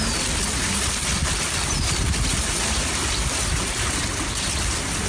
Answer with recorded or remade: recorded